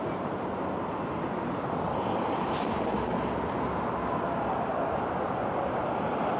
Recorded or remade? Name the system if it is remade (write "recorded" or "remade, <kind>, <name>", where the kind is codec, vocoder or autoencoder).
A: recorded